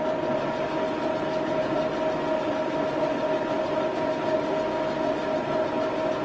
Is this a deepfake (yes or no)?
no